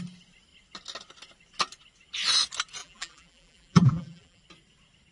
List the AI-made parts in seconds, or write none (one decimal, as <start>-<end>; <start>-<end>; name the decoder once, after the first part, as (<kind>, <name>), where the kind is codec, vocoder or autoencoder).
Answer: 2.8-4.4 (vocoder, BigVGAN v2)